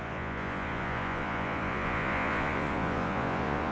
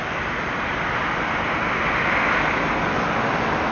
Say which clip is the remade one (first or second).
first